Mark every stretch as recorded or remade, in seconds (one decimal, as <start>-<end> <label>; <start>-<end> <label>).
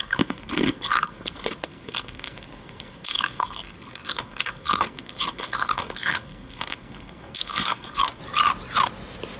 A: 0.0-8.2 remade; 8.2-9.4 recorded